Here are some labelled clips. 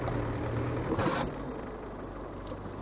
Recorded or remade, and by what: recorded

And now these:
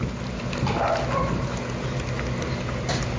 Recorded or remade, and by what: recorded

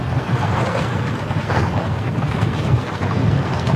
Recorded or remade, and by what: remade, codec, SNAC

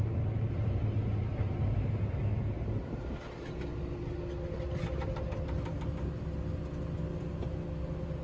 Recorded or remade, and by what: recorded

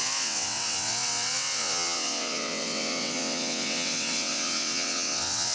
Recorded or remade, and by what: remade, vocoder, WaveNeXt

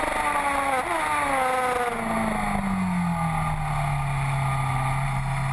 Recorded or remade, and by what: recorded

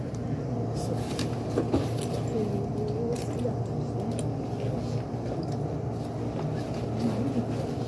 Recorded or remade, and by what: recorded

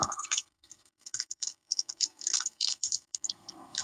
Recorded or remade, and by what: remade, codec, SNAC